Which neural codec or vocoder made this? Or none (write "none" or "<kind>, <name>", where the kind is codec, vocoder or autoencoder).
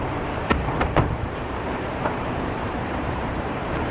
vocoder, BigVGAN v2